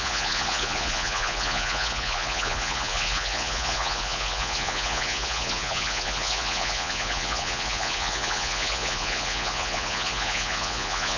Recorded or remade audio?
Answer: remade